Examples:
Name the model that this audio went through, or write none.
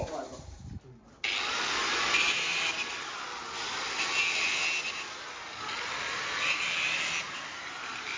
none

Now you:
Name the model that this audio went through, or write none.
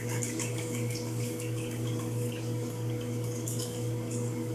codec, DAC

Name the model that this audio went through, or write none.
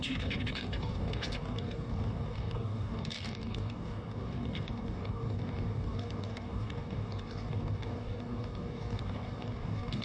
codec, DAC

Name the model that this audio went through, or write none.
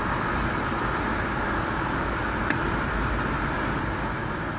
none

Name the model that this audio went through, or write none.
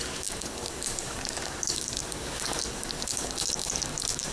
codec, DAC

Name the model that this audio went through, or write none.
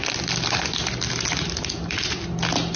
none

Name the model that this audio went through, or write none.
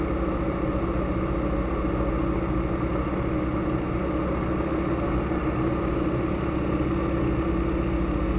none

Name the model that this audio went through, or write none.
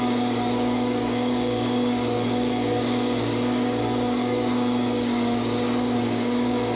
codec, DAC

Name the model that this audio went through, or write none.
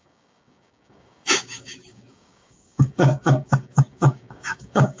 codec, DAC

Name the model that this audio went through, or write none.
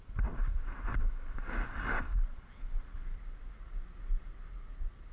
none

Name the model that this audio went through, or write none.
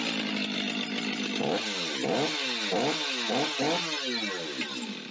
none